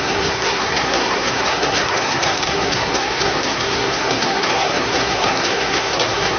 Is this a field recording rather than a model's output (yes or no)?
no